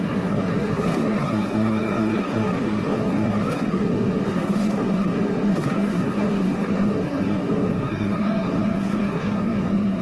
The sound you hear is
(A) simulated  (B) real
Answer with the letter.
A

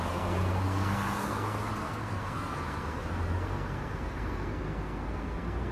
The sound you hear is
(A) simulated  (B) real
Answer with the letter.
A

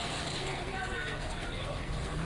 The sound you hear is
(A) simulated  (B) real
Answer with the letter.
A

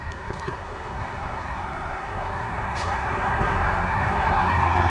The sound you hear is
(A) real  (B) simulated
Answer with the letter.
B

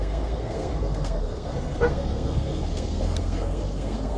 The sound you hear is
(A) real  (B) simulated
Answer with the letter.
B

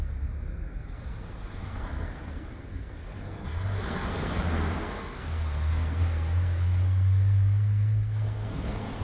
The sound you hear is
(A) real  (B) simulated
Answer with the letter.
B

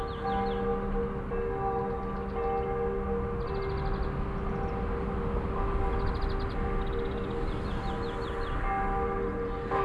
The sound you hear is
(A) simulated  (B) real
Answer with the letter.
B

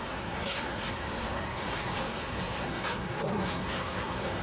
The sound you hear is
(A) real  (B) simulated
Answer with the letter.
B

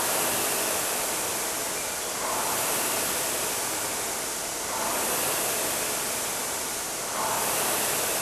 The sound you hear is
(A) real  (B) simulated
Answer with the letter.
A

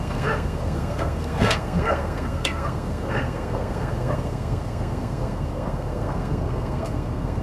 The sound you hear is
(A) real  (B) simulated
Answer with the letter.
B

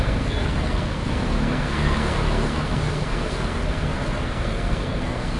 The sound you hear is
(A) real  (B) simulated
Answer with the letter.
B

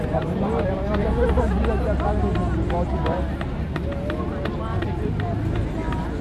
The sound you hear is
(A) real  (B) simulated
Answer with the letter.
A